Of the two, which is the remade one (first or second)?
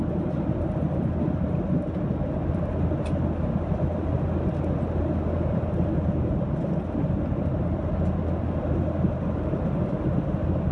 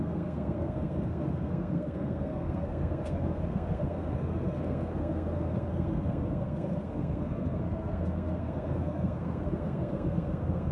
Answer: second